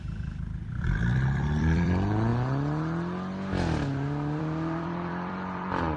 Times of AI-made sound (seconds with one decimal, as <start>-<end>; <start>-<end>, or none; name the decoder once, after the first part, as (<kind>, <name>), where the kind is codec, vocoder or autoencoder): 0.0-2.3 (vocoder, BigVGAN v2); 4.4-6.0